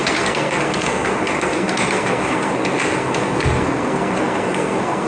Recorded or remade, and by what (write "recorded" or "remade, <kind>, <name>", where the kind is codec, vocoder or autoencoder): remade, codec, SNAC